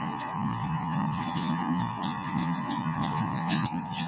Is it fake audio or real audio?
fake